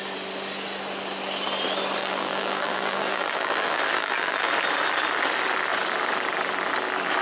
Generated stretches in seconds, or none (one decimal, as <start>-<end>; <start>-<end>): 2.0-4.5